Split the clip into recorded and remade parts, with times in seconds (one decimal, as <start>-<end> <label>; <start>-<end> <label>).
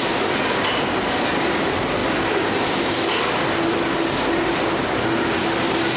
0.0-6.0 recorded